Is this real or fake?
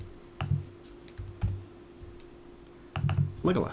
real